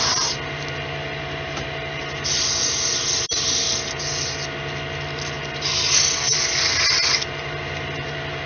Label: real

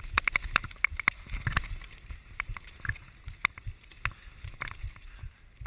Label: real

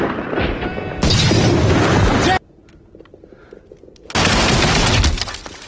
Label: real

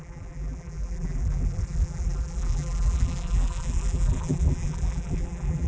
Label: fake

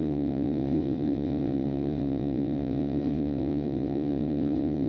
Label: fake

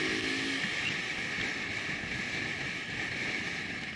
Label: real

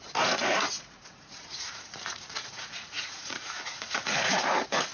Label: fake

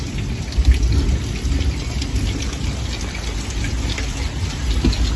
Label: real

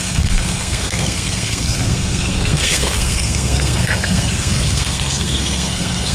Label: fake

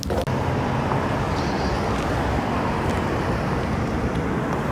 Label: real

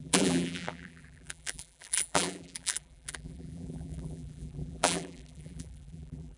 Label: fake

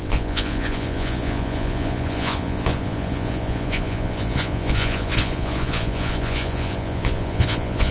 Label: fake